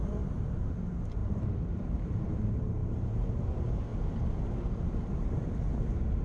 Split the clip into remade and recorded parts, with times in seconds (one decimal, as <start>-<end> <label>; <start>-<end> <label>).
0.0-3.9 remade; 3.9-5.1 recorded; 5.1-6.2 remade